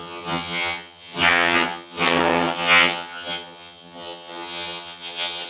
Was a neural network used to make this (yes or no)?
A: yes